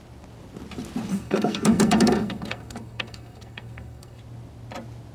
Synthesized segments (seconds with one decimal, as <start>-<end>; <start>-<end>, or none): 1.1-4.2